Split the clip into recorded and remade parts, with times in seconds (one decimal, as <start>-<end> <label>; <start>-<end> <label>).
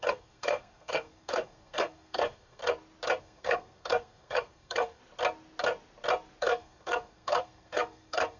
0.0-2.6 remade; 2.6-3.2 recorded; 3.2-5.0 remade; 5.0-6.4 recorded; 6.4-8.4 remade